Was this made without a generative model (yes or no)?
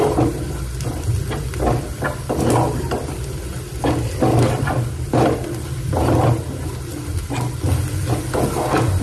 yes